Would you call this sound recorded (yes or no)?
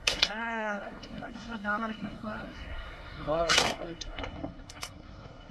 no